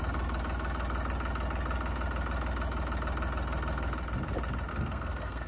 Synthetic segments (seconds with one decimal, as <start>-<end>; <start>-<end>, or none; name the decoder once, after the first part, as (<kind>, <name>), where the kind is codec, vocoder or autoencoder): 4.7-5.5 (codec, SNAC)